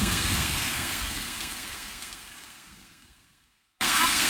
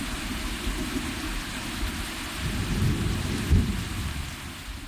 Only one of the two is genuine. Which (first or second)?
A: second